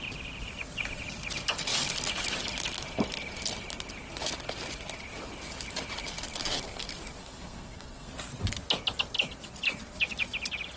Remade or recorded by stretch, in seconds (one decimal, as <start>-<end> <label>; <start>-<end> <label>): 0.0-7.2 recorded; 7.2-8.1 remade; 8.1-10.8 recorded